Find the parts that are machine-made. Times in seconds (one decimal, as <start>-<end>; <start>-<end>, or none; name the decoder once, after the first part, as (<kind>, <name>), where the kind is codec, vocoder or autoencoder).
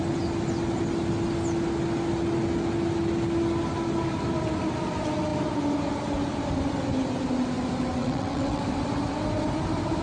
8.0-8.6 (vocoder, WaveNeXt)